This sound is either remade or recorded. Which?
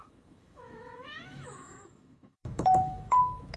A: remade